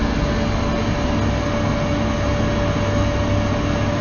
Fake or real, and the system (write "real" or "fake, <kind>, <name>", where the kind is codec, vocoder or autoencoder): real